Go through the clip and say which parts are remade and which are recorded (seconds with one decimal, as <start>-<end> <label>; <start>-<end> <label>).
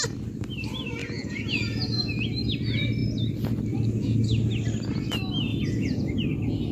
0.0-1.0 recorded; 1.0-2.1 remade; 2.1-5.5 recorded; 5.5-6.1 remade; 6.1-6.7 recorded